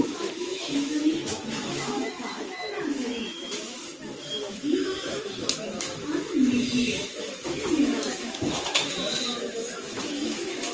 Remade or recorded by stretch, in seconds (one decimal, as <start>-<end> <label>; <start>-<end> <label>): 0.0-10.7 remade